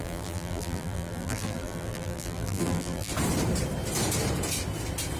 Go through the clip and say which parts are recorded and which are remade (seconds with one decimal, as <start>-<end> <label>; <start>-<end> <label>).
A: 0.0-3.1 remade; 3.1-5.2 recorded